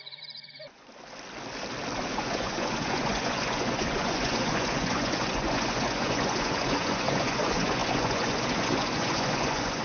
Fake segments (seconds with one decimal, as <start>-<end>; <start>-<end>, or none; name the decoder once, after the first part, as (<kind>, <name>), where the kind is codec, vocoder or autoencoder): 0.0-0.9 (vocoder, Vocos); 2.0-9.8